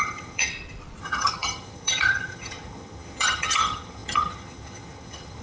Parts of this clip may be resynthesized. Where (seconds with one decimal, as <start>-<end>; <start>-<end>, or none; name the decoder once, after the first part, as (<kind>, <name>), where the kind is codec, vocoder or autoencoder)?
0.0-0.5 (vocoder, HiFi-GAN); 1.0-5.4